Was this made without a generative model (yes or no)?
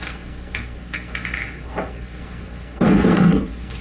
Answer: no